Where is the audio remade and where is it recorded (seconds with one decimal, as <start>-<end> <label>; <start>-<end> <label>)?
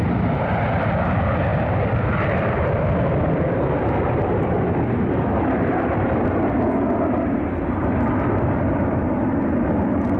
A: 0.0-10.2 remade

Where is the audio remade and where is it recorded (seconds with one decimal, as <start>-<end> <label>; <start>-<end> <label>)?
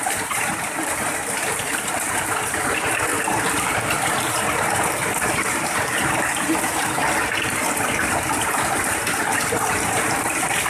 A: 0.0-3.1 remade; 3.1-3.7 recorded; 3.7-7.0 remade; 7.0-8.2 recorded; 8.2-10.7 remade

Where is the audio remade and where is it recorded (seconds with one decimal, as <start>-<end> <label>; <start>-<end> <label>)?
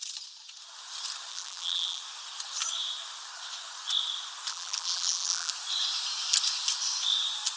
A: 0.0-1.3 recorded; 1.3-2.0 remade; 2.0-4.5 recorded; 4.5-5.5 remade; 5.5-7.6 recorded